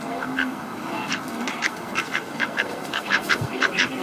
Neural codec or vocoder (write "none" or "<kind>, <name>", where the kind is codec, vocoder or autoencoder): codec, SNAC